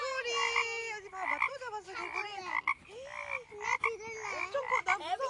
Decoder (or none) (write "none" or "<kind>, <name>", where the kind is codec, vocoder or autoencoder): none